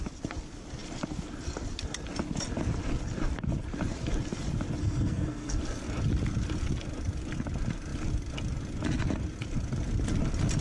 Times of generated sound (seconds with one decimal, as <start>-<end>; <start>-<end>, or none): 4.8-5.6